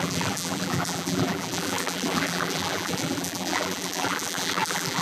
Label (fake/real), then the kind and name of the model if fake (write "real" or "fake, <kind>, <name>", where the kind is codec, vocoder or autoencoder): fake, vocoder, BigVGAN v2